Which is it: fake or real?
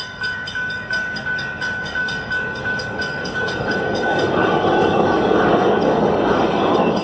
fake